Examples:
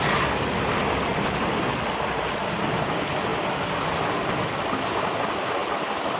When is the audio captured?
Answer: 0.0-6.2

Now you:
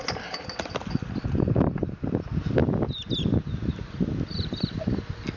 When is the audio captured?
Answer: 0.0-5.4